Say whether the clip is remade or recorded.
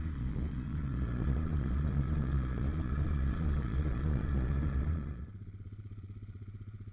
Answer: remade